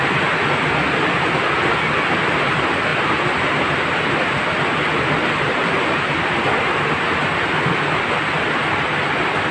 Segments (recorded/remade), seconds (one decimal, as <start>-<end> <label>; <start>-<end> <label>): 0.0-9.5 recorded